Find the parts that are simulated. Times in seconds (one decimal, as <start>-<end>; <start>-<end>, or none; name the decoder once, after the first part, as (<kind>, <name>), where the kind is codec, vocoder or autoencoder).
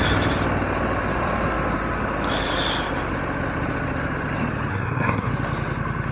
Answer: 4.7-5.3 (codec, SNAC)